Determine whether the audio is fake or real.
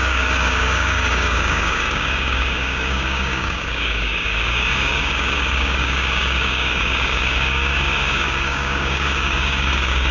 fake